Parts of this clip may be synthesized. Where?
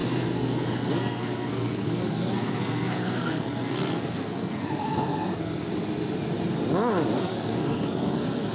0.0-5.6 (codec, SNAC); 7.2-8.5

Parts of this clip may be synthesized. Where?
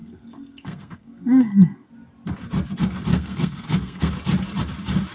0.0-1.9 (codec, SNAC); 3.1-4.1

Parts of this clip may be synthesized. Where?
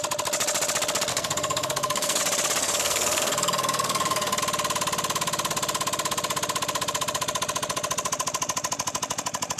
1.1-2.2 (codec, SNAC); 2.6-4.4